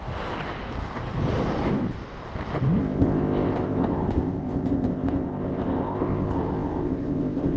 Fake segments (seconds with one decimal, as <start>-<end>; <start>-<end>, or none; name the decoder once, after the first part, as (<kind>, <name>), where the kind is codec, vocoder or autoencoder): 2.8-7.6 (codec, ZipCodec)